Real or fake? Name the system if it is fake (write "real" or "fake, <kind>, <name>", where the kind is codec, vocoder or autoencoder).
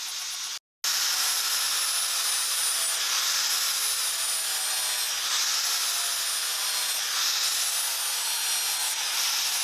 real